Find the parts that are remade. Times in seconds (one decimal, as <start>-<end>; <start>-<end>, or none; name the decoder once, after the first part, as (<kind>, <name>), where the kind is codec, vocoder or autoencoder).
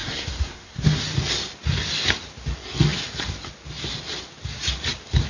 0.0-1.0 (codec, SNAC)